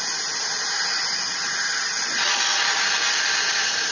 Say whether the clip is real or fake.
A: real